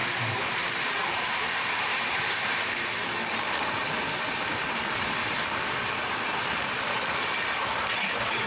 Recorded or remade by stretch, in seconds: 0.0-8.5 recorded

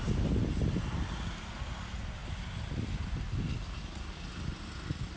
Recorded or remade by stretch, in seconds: 0.0-5.2 recorded

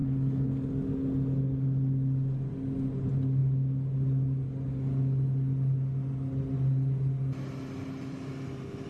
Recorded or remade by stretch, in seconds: 0.0-0.5 remade; 0.5-8.9 recorded

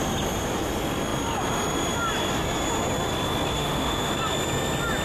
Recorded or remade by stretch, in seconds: 0.0-3.5 recorded; 3.5-4.1 remade; 4.1-5.0 recorded